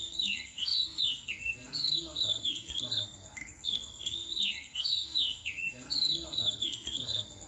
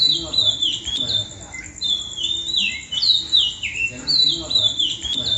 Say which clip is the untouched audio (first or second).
second